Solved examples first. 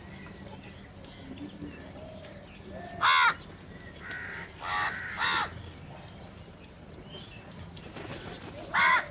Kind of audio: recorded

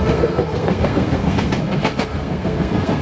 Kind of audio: remade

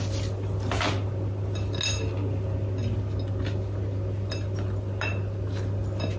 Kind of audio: recorded